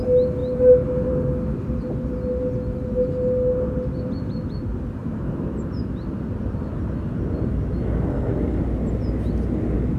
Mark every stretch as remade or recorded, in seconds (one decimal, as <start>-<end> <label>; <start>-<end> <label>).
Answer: 0.0-8.1 recorded; 8.1-8.6 remade; 8.6-10.0 recorded